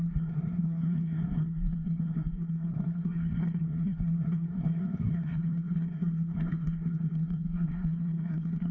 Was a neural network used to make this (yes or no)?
yes